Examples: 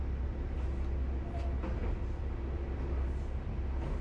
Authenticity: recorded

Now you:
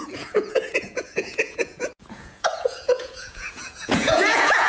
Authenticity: remade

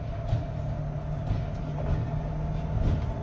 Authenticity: recorded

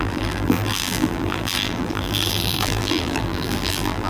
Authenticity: remade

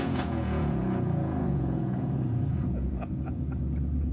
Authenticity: remade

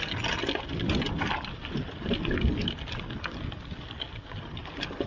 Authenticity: recorded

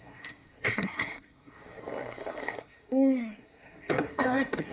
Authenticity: remade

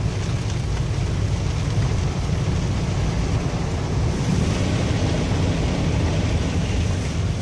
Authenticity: recorded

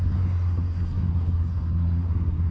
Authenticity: remade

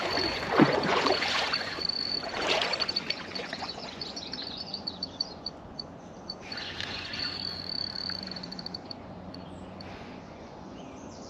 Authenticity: remade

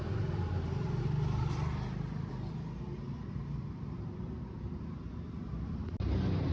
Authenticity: recorded